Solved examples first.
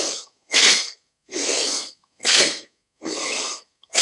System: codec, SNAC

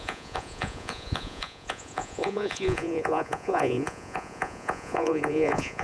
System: vocoder, Vocos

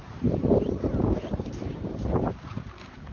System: vocoder, BigVGAN v2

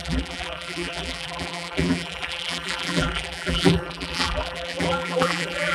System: vocoder, BigVGAN v2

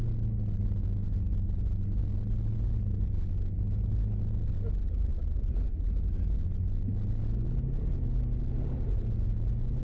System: none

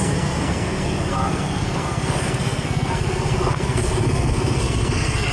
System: codec, SNAC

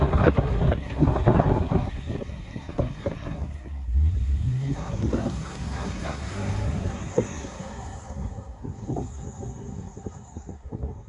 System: codec, SNAC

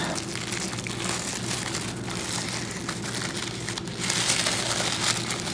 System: none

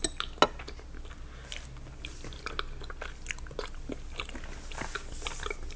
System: none